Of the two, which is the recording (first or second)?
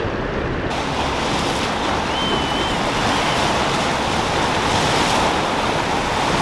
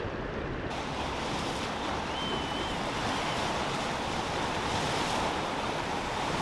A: first